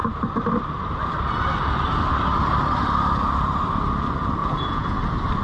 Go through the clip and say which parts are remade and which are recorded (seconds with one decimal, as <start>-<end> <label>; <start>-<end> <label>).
0.0-4.4 recorded; 4.4-5.0 remade; 5.0-5.4 recorded